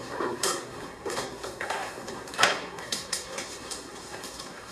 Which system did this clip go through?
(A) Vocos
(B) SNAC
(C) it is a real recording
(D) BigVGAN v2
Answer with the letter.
B